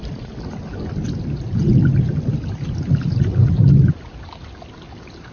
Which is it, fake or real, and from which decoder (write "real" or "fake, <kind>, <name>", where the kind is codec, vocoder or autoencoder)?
real